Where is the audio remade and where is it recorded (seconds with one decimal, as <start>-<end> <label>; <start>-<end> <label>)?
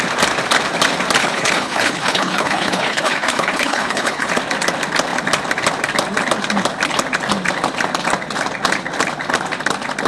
0.0-1.2 recorded; 1.2-4.3 remade; 4.3-10.1 recorded